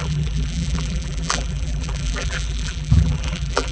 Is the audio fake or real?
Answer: fake